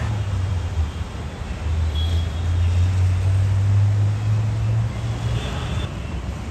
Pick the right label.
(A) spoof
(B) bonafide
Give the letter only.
B